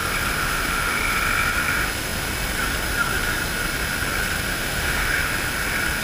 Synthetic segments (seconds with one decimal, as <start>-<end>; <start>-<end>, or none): 0.4-1.1; 4.5-5.3